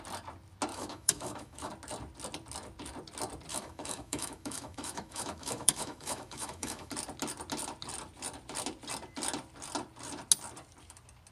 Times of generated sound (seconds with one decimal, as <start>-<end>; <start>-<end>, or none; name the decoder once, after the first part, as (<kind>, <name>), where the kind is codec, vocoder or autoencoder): 0.7-1.7 (autoencoder, DAC-VAE); 3.5-6.9